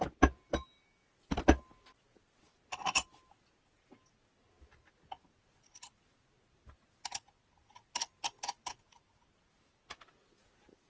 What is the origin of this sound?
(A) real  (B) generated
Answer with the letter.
A